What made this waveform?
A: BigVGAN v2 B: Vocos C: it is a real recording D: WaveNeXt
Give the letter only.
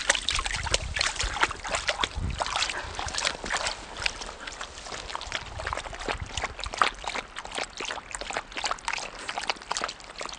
C